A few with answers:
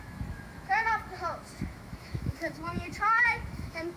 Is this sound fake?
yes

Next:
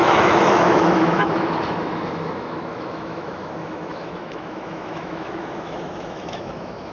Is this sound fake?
yes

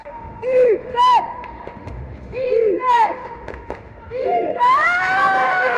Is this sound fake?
yes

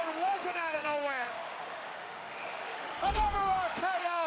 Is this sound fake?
yes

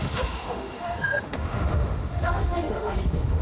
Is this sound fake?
yes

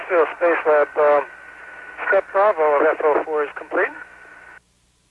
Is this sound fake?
no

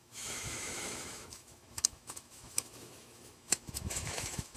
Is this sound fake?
yes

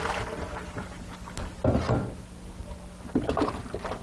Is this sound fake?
no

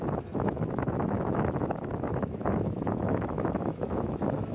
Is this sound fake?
yes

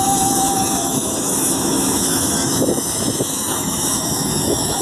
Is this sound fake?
yes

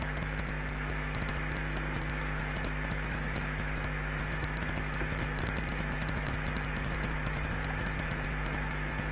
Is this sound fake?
yes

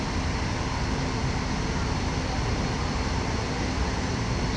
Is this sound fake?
no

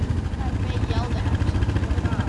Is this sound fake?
no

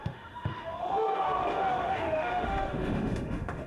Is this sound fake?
yes